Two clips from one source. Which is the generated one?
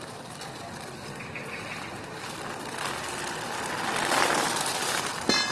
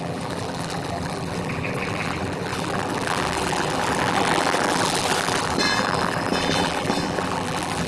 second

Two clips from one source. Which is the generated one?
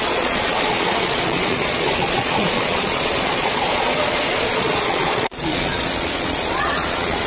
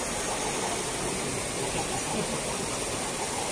first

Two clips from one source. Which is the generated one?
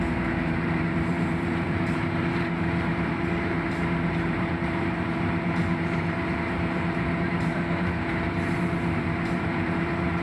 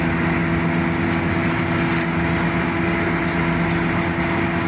first